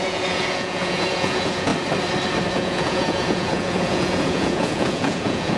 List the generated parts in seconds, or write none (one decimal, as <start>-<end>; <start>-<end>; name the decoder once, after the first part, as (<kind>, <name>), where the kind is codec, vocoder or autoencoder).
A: 0.0-1.7 (vocoder, Vocos); 2.5-5.6

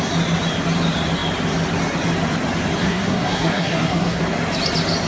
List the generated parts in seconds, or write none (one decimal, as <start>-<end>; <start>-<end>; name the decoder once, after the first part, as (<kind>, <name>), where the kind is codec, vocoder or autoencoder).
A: 2.8-4.2 (codec, SNAC)

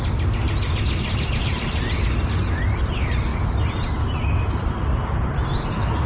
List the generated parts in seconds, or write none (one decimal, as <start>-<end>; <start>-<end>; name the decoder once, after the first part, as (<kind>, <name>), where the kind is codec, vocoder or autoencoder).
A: none

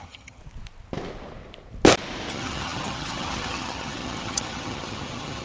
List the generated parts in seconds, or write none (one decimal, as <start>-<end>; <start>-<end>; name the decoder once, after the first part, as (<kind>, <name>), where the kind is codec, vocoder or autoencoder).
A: 0.0-0.4 (vocoder, HiFi-GAN); 2.3-5.4

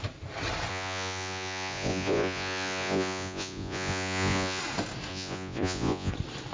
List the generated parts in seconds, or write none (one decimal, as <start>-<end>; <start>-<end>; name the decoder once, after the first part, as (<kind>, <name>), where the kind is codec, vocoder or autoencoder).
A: 0.7-4.6 (vocoder, Vocos); 5.1-6.1

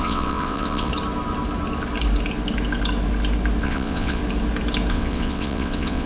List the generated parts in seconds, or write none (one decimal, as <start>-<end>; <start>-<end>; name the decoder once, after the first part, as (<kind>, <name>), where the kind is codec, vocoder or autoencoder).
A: 0.0-0.9 (vocoder, WaveNeXt); 3.6-4.2; 4.9-6.1